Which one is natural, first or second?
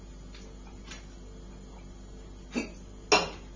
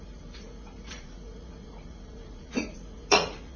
first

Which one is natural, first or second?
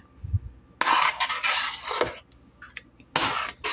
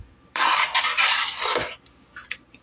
first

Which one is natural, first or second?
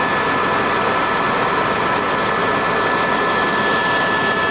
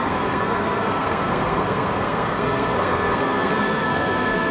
first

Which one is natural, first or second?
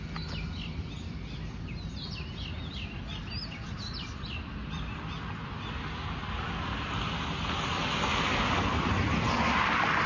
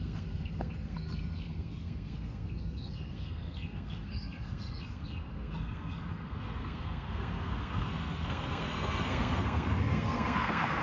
first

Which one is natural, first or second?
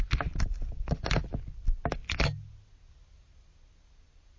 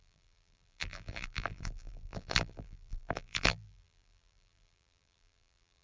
first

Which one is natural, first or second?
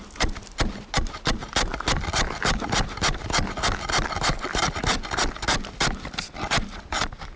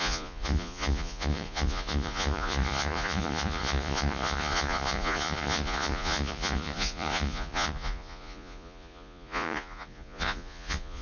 first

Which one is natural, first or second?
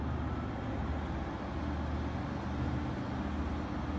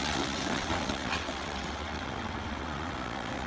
first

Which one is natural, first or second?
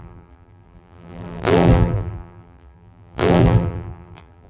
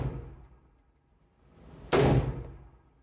second